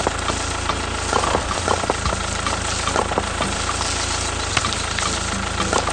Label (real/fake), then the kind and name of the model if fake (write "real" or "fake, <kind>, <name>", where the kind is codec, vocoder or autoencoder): real